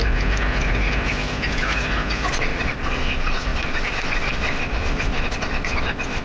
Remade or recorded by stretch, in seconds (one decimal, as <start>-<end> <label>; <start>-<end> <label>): 0.0-2.3 recorded; 2.3-6.2 remade